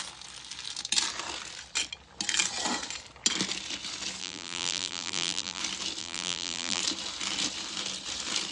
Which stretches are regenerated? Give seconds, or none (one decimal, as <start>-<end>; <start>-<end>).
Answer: 4.2-5.6; 6.0-6.8